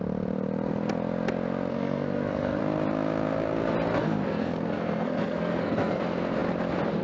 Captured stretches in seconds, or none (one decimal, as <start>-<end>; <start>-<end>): 0.0-1.7; 2.6-4.0; 6.0-7.0